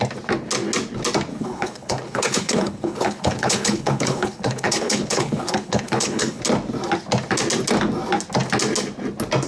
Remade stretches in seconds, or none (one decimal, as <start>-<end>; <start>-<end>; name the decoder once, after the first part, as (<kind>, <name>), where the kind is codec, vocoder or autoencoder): 1.3-6.4 (codec, HILCodec)